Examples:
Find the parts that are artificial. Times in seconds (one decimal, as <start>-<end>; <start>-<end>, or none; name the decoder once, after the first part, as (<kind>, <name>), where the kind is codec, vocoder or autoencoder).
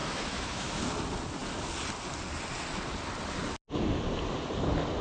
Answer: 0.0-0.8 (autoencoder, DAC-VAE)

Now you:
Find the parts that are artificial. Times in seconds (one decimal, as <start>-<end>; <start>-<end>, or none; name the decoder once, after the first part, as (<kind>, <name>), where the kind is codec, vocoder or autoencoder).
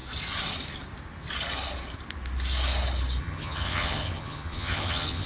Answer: 3.2-5.3 (vocoder, HiFi-GAN)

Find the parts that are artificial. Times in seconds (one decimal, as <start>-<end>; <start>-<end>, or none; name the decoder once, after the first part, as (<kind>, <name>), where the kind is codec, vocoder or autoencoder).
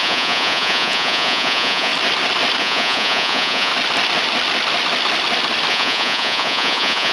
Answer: 0.0-1.9 (vocoder, Vocos); 2.6-3.7; 5.7-7.1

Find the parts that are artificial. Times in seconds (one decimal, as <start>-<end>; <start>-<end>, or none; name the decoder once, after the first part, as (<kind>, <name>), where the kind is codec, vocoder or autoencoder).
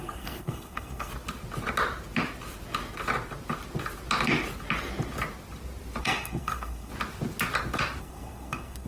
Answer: 0.0-1.1 (codec, SNAC); 6.0-6.9; 8.0-8.9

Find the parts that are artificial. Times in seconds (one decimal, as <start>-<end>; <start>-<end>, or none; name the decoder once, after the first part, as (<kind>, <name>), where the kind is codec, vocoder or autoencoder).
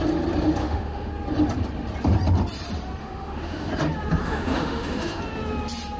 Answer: 0.6-1.1 (autoencoder, DAC-VAE); 3.0-3.7; 4.2-5.2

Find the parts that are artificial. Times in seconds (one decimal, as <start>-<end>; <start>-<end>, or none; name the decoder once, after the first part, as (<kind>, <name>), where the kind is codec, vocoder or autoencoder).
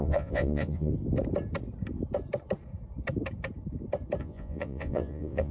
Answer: 0.0-0.9 (vocoder, Vocos); 4.2-5.5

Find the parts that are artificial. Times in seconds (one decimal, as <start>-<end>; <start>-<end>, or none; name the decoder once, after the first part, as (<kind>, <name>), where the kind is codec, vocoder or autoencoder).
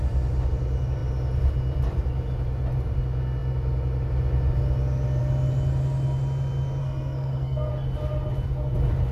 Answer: 6.8-7.7 (codec, SNAC)